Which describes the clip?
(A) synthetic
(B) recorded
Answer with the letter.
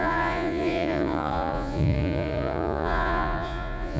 A